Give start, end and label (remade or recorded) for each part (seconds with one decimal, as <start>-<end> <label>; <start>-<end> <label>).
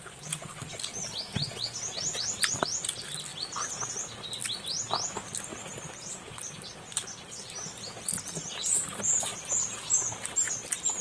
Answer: 0.0-11.0 recorded